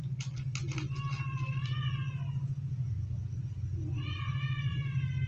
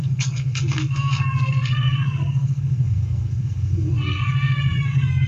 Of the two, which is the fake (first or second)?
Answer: second